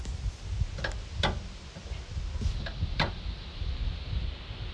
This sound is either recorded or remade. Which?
recorded